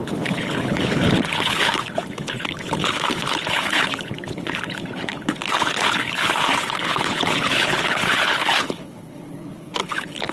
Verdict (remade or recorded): remade